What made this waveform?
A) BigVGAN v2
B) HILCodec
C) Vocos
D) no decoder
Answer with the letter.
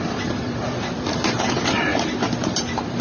A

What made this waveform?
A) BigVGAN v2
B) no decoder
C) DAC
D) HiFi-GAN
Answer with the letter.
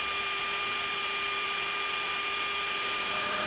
A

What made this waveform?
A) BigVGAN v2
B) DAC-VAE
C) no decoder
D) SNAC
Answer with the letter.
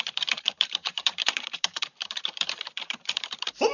A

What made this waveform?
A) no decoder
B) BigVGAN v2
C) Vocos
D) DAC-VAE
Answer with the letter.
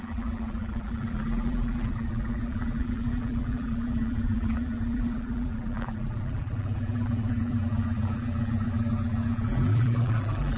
B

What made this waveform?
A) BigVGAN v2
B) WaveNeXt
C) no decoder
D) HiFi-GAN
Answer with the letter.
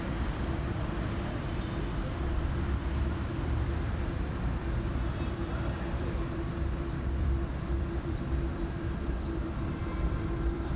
A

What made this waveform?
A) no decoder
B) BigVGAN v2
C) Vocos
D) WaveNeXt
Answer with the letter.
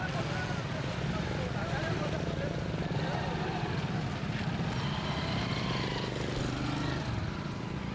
A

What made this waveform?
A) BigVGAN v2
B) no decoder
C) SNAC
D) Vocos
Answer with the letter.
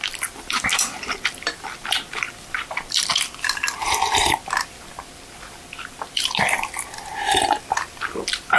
A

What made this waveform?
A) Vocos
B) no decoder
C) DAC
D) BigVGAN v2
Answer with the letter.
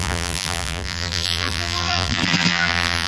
D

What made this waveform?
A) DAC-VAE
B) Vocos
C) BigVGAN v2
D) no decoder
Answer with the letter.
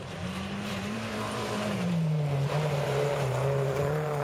C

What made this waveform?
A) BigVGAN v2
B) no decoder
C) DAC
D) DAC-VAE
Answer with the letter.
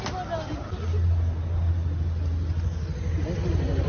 B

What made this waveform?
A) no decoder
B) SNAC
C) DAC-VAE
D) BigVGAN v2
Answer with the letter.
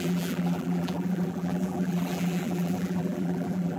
D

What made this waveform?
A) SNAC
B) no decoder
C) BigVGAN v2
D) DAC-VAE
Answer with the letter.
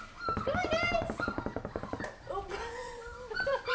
C